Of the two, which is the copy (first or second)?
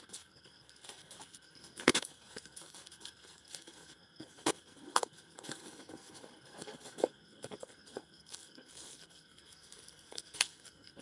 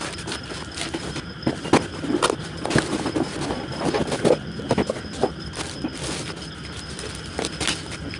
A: first